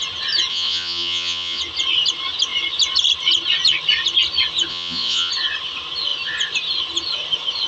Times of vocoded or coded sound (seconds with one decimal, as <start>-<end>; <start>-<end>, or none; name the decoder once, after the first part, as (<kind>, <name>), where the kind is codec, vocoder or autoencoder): 0.5-1.6 (vocoder, Vocos); 4.7-5.3